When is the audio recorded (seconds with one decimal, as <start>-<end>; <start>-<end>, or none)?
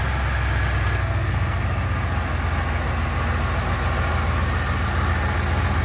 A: 0.0-1.0; 1.6-5.8